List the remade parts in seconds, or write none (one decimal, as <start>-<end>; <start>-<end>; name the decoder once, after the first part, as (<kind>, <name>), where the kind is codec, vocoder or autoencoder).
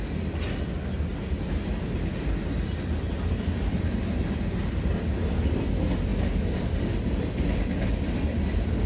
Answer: none